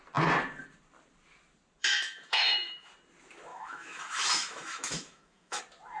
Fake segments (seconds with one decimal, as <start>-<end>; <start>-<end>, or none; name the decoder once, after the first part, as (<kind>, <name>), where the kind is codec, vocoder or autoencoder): 1.8-2.9 (autoencoder, DAC-VAE); 3.5-5.6